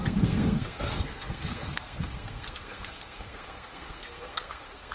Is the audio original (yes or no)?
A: no